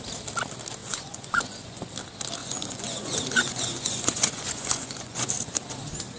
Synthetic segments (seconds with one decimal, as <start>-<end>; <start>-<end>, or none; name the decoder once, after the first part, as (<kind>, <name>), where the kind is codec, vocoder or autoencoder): 0.8-1.9 (vocoder, Vocos); 2.4-5.3